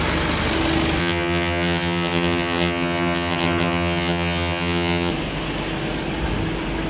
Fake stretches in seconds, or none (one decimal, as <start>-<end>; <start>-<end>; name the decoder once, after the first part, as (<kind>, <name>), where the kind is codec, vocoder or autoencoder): 1.0-5.1 (vocoder, HiFi-GAN)